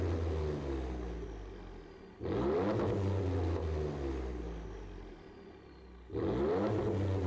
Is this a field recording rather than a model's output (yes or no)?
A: yes